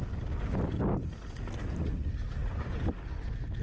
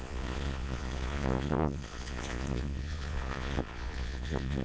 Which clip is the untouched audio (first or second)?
first